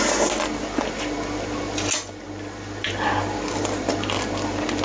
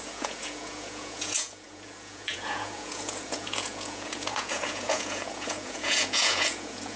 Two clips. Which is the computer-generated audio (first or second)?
second